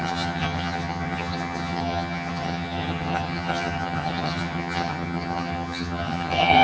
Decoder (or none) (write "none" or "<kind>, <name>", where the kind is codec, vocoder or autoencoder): vocoder, HiFi-GAN